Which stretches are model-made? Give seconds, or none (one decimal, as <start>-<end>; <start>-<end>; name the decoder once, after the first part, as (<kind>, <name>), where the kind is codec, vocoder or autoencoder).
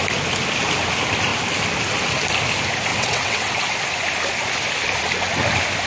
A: 2.9-3.6 (vocoder, WaveNeXt)